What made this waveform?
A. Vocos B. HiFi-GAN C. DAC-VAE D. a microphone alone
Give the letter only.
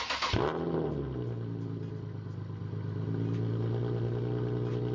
D